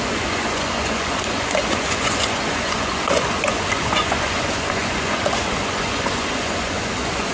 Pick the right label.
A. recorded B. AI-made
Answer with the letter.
B